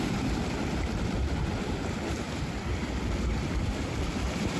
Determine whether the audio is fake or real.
fake